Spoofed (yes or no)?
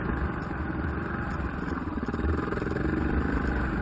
no